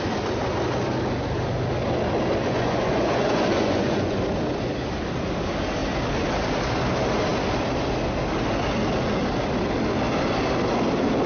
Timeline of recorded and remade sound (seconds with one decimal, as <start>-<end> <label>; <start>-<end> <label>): 0.0-2.4 recorded; 2.4-4.2 remade; 4.2-11.3 recorded

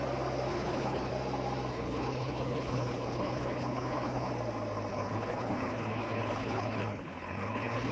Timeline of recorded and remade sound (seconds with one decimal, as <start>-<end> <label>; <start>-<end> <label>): 0.0-0.5 recorded; 0.5-1.1 remade; 1.1-1.7 recorded; 1.7-4.3 remade; 4.3-4.9 recorded; 4.9-7.9 remade

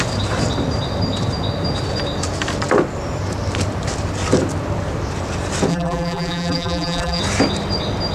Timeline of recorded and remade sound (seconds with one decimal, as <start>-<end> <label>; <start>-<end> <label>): 0.0-5.7 recorded; 5.7-7.2 remade; 7.2-8.1 recorded

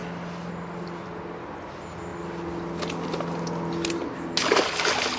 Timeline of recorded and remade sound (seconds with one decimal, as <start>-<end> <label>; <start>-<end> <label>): 0.0-5.2 recorded

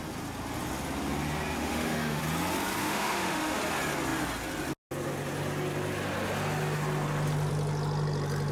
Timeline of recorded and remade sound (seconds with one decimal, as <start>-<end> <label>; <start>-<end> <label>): 0.0-1.6 recorded; 1.6-2.2 remade; 2.2-2.8 recorded; 2.8-3.6 remade; 3.6-8.5 recorded

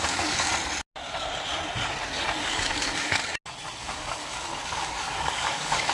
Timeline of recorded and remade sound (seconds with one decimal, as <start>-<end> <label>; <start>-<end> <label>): 0.0-0.5 remade; 0.5-2.4 recorded; 2.4-3.2 remade; 3.2-3.8 recorded; 3.8-5.9 remade